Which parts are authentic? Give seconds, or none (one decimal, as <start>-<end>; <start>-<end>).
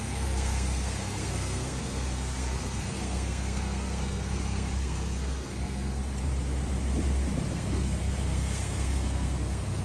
6.0-7.5